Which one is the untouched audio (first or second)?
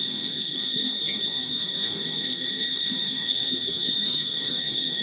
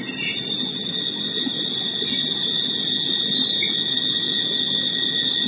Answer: second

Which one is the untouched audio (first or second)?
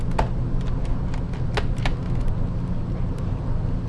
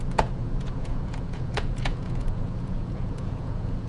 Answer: first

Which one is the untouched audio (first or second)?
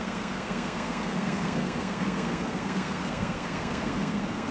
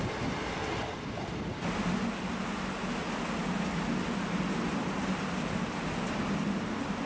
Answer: second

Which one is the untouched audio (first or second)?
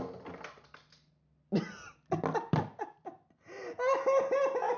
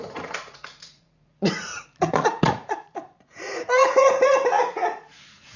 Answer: first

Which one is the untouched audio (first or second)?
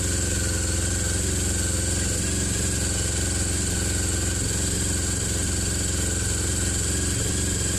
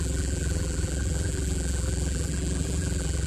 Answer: first